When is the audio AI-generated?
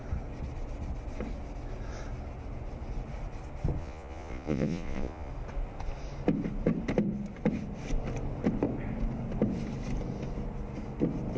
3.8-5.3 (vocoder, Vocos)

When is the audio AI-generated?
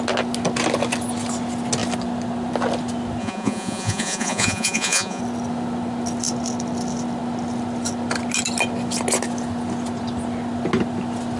3.2-5.2 (vocoder, Vocos)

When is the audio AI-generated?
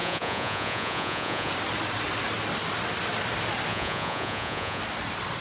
0.0-1.5 (vocoder, Vocos); 3.7-4.8